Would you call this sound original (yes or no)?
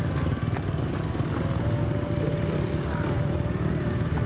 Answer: yes